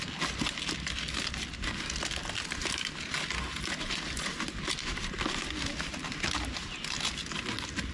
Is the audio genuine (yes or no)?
yes